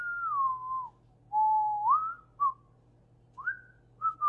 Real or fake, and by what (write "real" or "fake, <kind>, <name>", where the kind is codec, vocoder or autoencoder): real